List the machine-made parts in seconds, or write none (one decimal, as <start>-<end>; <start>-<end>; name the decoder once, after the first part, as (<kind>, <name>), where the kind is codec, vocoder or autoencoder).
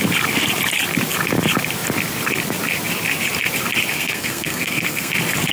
3.9-5.1 (codec, SNAC)